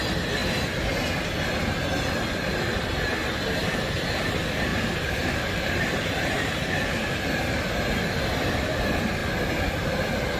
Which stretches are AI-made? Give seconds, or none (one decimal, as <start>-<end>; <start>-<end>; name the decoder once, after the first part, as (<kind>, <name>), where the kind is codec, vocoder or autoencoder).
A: 3.6-4.1 (vocoder, BigVGAN v2); 4.7-7.6